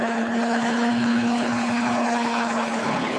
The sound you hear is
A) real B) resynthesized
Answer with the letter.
B